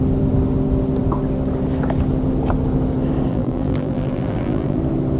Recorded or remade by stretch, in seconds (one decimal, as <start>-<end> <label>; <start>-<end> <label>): 0.0-3.3 recorded; 3.3-4.8 remade; 4.8-5.2 recorded